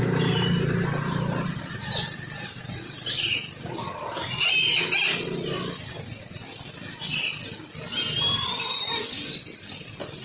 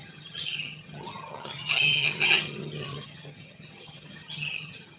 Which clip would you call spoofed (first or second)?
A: second